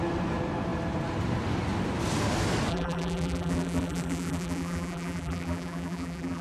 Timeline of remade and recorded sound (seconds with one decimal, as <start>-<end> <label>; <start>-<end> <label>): 0.0-2.7 recorded; 2.7-6.4 remade